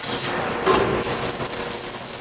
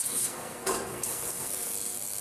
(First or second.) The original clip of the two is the first